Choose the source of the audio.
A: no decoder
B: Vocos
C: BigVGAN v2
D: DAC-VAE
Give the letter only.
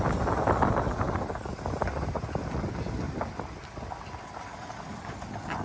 A